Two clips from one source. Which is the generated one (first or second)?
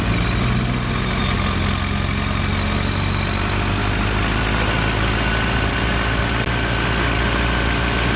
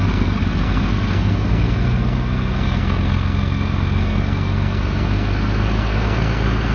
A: second